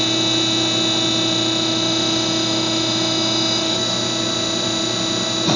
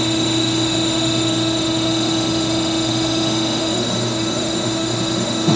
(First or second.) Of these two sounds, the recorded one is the first